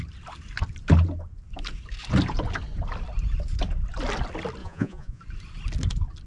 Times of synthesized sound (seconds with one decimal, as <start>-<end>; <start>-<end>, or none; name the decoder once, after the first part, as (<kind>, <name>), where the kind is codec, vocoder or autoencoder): 4.6-5.2 (vocoder, Vocos)